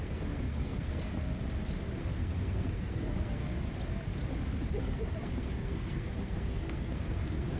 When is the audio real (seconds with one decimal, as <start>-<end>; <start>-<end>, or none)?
1.1-2.0; 3.4-4.8